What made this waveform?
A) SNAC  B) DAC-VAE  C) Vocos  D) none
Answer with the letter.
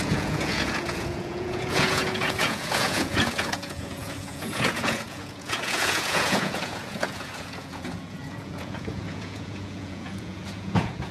C